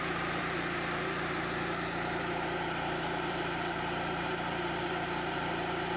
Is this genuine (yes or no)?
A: no